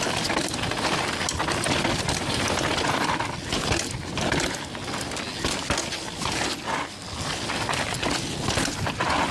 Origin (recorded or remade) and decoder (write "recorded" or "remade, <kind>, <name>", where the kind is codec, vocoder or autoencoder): recorded